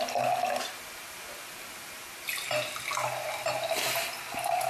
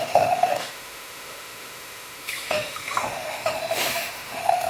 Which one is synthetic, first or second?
second